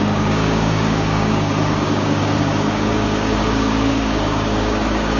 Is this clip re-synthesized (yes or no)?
yes